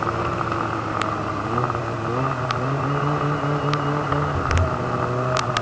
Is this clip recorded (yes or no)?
yes